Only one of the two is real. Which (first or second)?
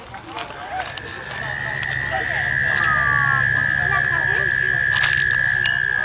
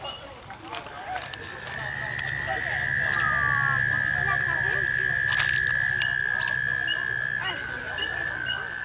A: first